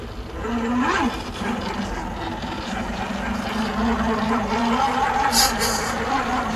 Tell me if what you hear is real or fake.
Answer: real